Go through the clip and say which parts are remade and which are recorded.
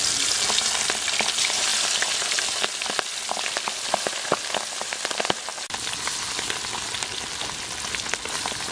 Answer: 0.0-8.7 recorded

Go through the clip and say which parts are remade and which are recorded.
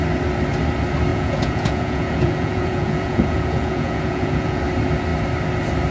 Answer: 0.0-1.1 recorded; 1.1-4.6 remade; 4.6-5.9 recorded